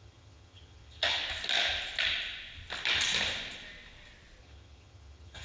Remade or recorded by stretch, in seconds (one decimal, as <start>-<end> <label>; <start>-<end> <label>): 0.0-1.2 remade; 1.2-4.4 recorded; 4.4-5.4 remade